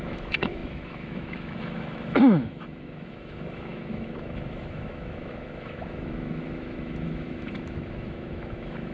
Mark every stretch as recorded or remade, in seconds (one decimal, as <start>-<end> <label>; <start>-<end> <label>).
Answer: 0.0-8.9 remade